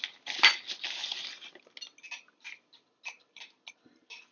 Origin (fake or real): real